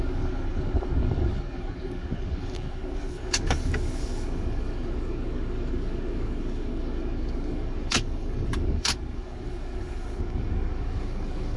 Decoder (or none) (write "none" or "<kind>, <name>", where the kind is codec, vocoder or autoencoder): codec, DAC